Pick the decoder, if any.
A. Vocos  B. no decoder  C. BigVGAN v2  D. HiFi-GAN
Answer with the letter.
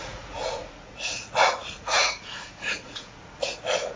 A